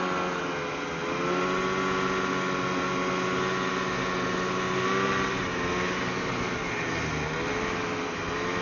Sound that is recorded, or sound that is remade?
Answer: recorded